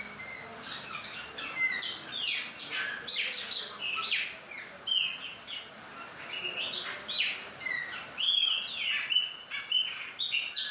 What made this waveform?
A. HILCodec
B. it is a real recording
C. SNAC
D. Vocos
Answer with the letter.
B